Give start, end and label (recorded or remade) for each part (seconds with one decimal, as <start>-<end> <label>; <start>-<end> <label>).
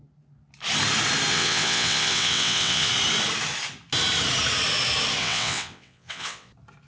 0.0-1.3 recorded; 1.3-2.9 remade; 2.9-5.2 recorded; 5.2-6.5 remade; 6.5-6.9 recorded